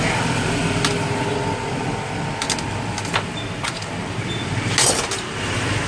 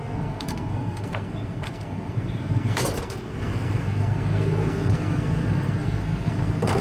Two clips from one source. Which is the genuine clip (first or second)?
first